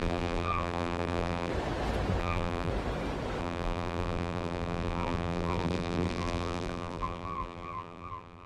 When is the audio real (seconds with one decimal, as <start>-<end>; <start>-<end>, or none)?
1.5-2.2; 2.7-3.4